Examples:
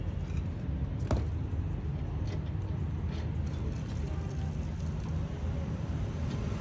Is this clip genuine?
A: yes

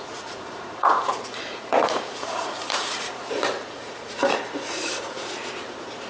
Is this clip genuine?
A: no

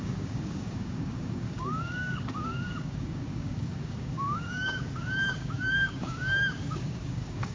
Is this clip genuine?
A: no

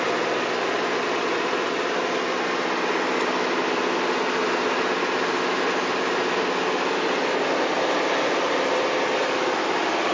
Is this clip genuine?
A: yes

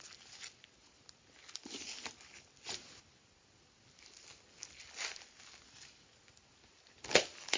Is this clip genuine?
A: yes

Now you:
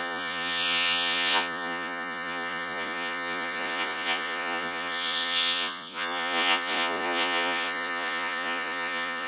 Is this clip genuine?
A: no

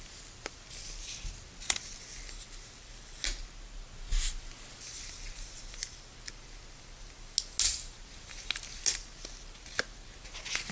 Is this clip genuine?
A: yes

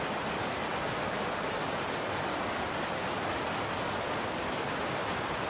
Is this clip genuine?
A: no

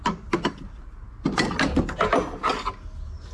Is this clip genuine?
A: yes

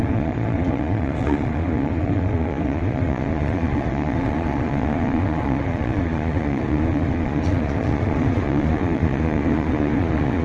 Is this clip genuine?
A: no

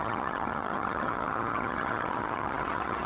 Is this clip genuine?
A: no